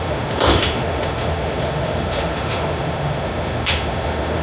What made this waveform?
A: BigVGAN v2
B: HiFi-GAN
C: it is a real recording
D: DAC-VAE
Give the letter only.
D